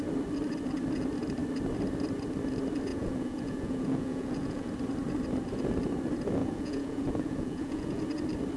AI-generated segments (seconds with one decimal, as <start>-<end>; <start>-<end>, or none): 2.9-4.7; 6.4-8.0